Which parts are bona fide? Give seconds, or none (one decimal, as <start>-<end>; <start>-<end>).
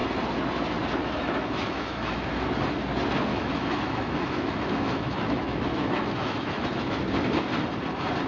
0.0-1.0; 2.3-3.3; 7.0-8.3